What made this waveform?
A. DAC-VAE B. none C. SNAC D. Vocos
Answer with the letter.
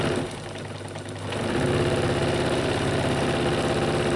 B